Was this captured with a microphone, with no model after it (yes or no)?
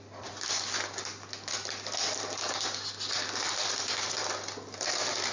yes